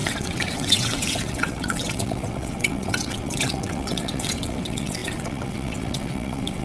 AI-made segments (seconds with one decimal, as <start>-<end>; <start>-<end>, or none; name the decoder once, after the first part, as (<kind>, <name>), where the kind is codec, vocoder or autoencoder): 0.0-6.6 (vocoder, WaveNeXt)